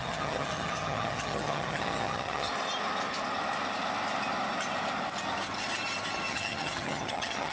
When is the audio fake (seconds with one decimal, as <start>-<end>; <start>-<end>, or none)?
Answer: 0.0-2.5; 6.3-7.5